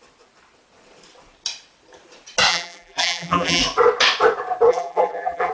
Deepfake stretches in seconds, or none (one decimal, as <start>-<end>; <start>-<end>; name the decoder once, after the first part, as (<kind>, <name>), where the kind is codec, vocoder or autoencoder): 2.5-3.6 (vocoder, BigVGAN v2); 4.7-5.5